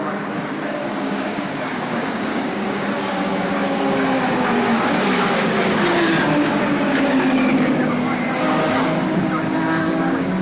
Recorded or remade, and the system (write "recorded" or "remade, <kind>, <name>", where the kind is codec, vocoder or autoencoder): remade, codec, DAC